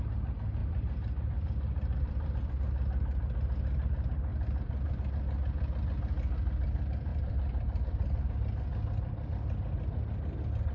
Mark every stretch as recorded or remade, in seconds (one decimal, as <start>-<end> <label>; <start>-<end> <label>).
0.0-0.6 recorded; 0.6-2.5 remade; 2.5-4.3 recorded; 4.3-4.9 remade; 4.9-7.1 recorded; 7.1-8.3 remade; 8.3-10.7 recorded